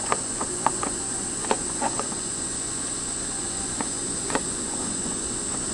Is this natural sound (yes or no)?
no